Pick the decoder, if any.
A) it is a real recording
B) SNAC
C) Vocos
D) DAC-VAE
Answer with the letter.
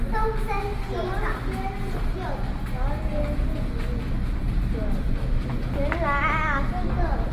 A